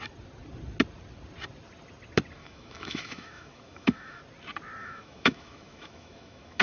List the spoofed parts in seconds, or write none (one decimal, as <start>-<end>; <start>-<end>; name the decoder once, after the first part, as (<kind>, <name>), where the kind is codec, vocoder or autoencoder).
2.4-4.2 (autoencoder, DAC-VAE); 4.8-6.6